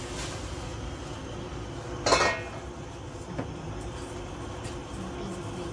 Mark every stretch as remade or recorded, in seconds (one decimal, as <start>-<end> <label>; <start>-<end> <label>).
0.0-5.7 recorded